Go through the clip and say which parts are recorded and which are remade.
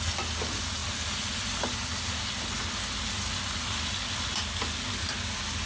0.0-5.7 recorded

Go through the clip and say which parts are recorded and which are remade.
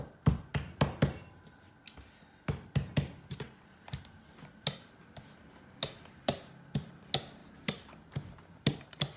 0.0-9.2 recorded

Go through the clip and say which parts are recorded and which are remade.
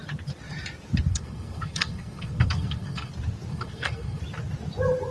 0.0-1.1 recorded; 1.1-3.1 remade; 3.1-3.5 recorded; 3.5-4.2 remade; 4.2-5.1 recorded